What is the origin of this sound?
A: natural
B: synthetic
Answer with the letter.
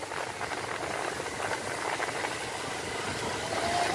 A